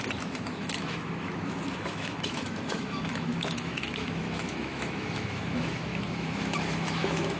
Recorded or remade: remade